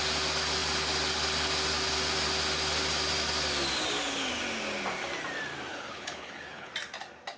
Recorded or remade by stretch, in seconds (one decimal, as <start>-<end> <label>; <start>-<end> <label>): 0.0-5.7 recorded; 5.7-6.7 remade; 6.7-7.4 recorded